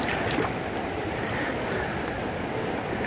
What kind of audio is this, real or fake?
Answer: real